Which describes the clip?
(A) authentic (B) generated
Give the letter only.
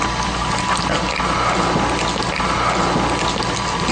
A